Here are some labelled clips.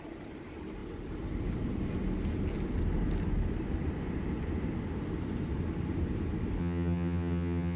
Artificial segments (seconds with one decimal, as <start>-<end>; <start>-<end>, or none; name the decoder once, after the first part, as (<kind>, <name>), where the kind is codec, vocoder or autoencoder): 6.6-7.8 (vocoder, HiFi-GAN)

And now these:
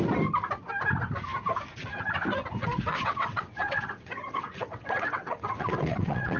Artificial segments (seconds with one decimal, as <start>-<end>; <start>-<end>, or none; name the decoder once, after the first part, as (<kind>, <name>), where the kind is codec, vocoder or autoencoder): 2.6-6.4 (vocoder, WaveNeXt)

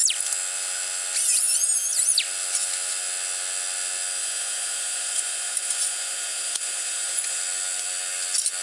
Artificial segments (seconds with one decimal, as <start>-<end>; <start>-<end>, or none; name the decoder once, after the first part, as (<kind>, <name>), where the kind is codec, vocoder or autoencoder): 4.2-7.4 (vocoder, Vocos)

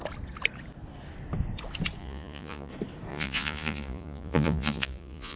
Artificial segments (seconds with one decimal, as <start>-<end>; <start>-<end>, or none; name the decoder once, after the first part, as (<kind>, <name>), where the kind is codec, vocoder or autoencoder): 2.0-2.7 (vocoder, Vocos); 3.1-5.4

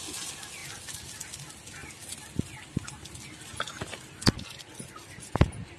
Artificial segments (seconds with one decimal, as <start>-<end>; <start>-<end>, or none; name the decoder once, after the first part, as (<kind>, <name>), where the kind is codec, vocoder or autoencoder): none